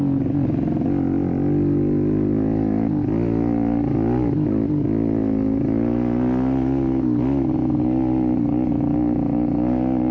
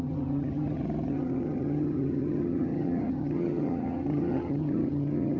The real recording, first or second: first